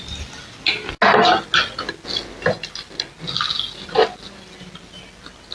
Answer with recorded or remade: recorded